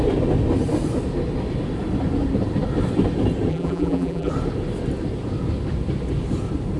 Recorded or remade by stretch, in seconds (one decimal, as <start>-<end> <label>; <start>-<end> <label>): 0.0-3.5 recorded; 3.5-4.3 remade; 4.3-6.8 recorded